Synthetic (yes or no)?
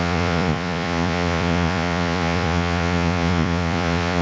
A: yes